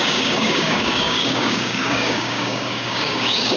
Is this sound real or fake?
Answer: fake